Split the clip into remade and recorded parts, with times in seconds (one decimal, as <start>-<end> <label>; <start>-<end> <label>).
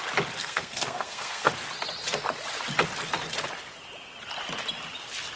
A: 0.0-0.4 recorded; 0.4-1.5 remade; 1.5-5.4 recorded